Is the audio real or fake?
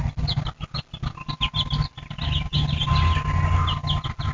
real